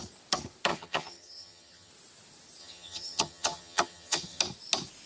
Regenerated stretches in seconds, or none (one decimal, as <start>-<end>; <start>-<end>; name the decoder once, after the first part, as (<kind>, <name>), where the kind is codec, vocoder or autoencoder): 0.7-1.9 (vocoder, HiFi-GAN); 2.6-4.4